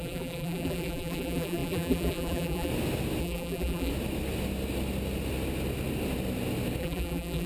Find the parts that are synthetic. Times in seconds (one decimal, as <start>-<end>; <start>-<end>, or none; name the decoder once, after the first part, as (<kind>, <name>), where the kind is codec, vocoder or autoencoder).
0.0-2.7 (vocoder, BigVGAN v2); 3.2-3.9; 6.8-7.5